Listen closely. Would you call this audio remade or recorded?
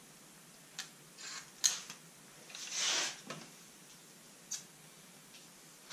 recorded